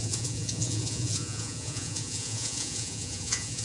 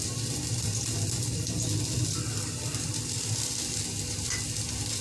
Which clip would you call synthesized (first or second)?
first